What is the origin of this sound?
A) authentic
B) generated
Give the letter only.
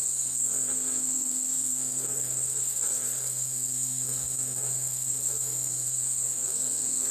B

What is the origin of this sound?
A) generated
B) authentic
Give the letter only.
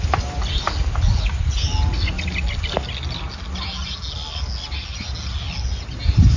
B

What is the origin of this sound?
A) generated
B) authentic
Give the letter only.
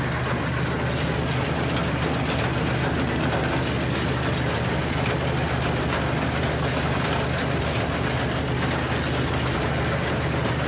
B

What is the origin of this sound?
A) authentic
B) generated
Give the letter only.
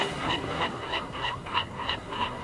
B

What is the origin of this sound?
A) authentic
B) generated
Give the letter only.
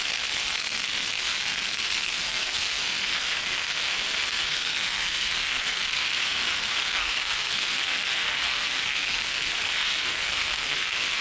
B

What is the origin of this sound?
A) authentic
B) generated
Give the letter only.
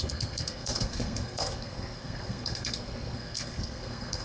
B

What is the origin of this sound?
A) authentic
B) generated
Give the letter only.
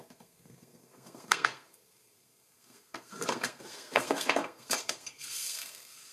B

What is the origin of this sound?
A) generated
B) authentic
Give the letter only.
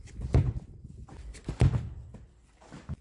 B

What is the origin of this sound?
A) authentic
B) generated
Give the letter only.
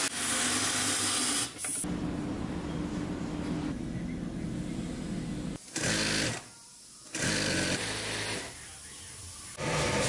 A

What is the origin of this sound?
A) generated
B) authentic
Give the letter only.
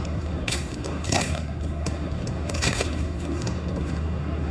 A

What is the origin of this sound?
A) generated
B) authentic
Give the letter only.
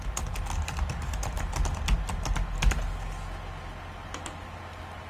B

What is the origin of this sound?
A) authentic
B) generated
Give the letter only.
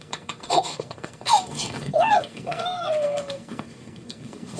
B